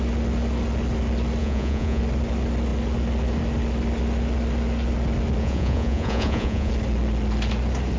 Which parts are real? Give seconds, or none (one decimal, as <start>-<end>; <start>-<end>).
0.0-1.4; 2.0-5.4; 6.7-8.0